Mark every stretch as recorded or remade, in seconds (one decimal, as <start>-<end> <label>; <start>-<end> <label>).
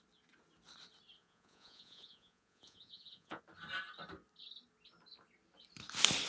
0.0-1.2 recorded; 1.2-3.4 remade; 3.4-6.3 recorded